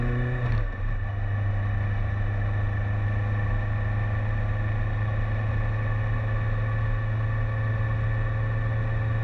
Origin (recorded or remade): recorded